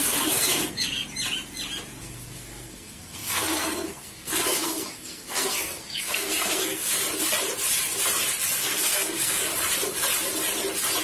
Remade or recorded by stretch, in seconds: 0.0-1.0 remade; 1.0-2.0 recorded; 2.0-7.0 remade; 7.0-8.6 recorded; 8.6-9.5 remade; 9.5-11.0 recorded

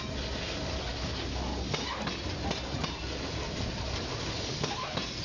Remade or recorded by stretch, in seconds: 0.0-5.2 recorded

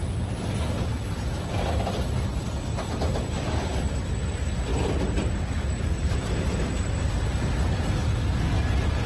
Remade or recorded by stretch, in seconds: 0.0-4.7 recorded; 4.7-7.1 remade; 7.1-9.1 recorded

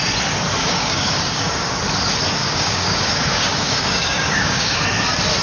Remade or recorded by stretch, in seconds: 0.0-0.6 recorded; 0.6-1.7 remade; 1.7-2.4 recorded; 2.4-4.8 remade; 4.8-5.4 recorded

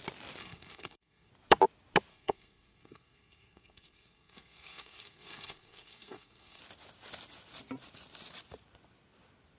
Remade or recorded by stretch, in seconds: 0.0-0.4 recorded; 0.4-1.3 remade; 1.3-2.1 recorded; 2.1-6.6 remade; 6.6-9.6 recorded